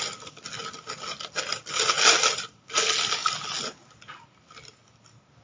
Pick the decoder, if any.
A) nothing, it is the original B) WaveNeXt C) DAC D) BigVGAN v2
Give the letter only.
A